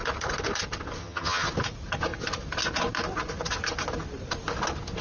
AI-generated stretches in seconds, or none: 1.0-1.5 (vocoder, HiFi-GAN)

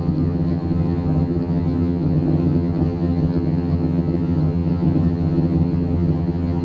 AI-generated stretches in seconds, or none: 0.0-6.6 (vocoder, HiFi-GAN)

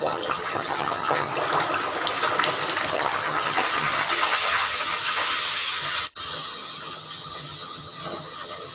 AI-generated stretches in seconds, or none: 0.0-1.3 (vocoder, HiFi-GAN); 2.9-8.7

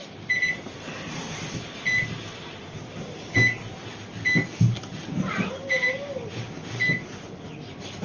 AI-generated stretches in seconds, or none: none

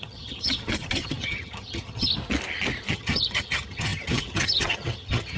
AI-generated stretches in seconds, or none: 0.0-2.1 (vocoder, HiFi-GAN); 2.9-5.4